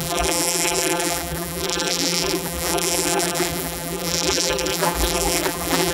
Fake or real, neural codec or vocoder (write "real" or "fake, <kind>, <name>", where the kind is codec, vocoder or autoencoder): fake, vocoder, BigVGAN v2